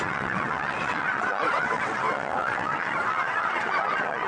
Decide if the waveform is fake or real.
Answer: fake